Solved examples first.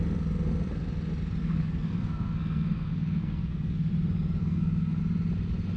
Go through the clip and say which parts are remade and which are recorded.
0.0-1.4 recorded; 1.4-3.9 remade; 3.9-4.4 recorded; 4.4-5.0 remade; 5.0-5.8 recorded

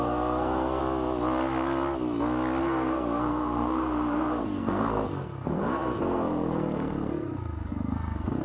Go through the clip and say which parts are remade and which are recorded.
0.0-0.8 remade; 0.8-2.6 recorded; 2.6-8.4 remade

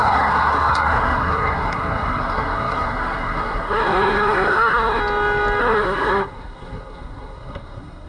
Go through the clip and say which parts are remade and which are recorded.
0.0-5.0 remade; 5.0-5.6 recorded; 5.6-8.1 remade

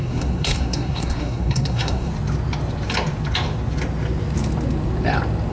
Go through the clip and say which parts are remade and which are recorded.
0.0-2.1 remade; 2.1-5.5 recorded

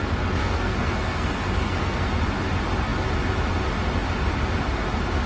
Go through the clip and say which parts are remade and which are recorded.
0.0-0.4 recorded; 0.4-2.1 remade; 2.1-5.3 recorded

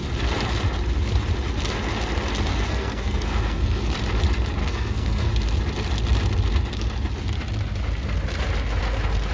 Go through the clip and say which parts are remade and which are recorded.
0.0-2.5 recorded; 2.5-3.9 remade; 3.9-4.6 recorded; 4.6-5.3 remade; 5.3-9.3 recorded

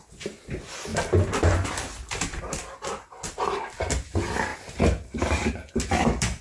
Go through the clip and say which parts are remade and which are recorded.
0.0-6.4 recorded